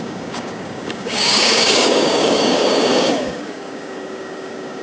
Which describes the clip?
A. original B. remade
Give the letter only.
B